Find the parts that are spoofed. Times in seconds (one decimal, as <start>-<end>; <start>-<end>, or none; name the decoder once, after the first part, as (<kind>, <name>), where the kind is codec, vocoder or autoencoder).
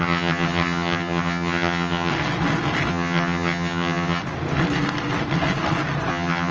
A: 0.0-2.1 (vocoder, HiFi-GAN); 2.9-4.2; 6.1-6.5